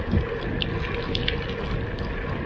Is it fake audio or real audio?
real